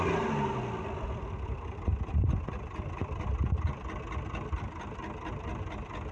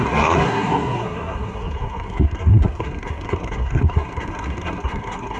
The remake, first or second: second